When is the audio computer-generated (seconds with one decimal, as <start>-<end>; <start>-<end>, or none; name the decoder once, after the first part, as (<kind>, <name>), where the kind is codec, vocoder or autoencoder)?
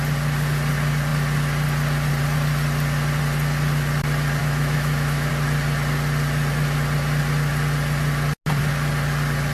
4.4-5.3 (autoencoder, DAC-VAE)